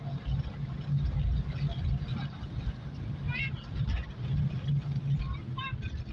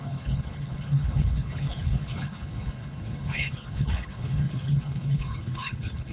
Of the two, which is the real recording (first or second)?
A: first